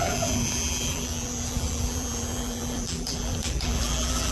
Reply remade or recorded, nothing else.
remade